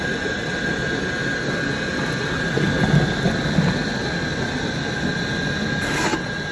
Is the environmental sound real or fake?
real